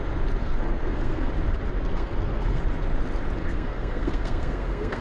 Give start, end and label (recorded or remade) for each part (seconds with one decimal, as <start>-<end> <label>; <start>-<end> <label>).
0.0-0.4 recorded; 0.4-1.3 remade; 1.3-1.9 recorded; 1.9-2.6 remade; 2.6-3.4 recorded; 3.4-5.0 remade